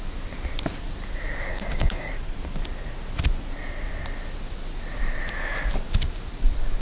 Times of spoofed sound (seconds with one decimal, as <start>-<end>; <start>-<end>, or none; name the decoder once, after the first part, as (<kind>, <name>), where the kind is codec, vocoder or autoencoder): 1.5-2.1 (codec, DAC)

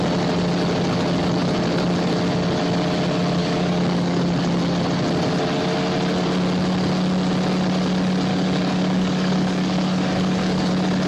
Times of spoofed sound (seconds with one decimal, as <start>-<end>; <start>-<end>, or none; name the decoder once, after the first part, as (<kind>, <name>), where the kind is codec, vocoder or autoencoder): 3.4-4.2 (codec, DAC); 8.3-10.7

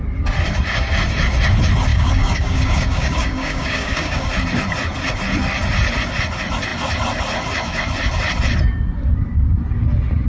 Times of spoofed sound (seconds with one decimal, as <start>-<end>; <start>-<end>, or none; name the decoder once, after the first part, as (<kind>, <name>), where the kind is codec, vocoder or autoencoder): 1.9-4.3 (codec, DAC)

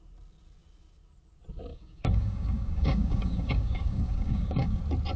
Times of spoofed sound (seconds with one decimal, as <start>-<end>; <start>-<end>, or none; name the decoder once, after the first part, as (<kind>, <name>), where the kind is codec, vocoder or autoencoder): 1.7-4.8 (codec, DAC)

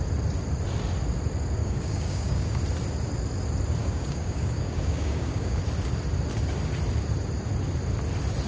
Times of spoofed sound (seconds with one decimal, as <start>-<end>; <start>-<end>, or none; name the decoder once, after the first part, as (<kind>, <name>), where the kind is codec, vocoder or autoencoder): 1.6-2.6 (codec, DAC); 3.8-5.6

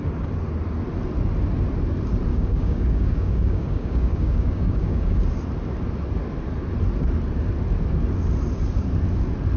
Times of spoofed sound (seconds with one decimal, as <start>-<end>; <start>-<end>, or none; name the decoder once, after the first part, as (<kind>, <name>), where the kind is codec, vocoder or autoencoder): 2.3-5.2 (codec, DAC)

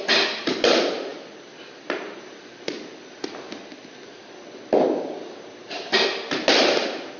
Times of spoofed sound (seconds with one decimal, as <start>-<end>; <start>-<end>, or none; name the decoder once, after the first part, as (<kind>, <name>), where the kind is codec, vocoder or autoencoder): none